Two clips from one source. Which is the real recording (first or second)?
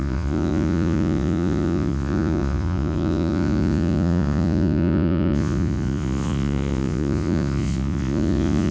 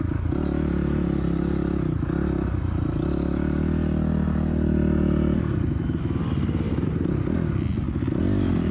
second